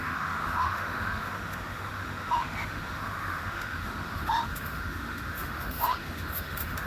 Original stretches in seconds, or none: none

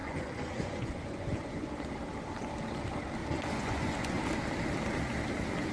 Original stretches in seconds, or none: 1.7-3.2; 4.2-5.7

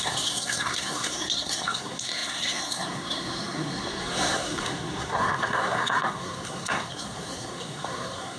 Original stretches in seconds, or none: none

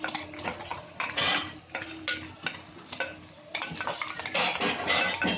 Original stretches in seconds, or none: 0.0-0.7; 1.6-5.4